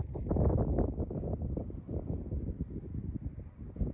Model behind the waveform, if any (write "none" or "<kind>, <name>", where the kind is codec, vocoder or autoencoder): none